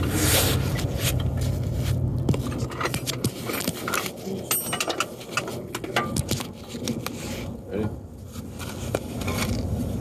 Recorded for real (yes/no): yes